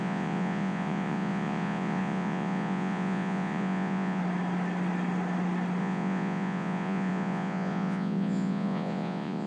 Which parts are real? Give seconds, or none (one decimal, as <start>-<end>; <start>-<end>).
4.2-5.8